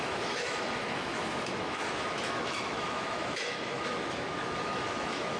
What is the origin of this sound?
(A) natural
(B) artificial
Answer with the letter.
B